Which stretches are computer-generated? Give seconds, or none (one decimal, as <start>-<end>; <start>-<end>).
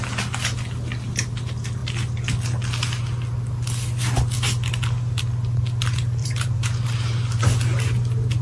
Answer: 6.2-7.4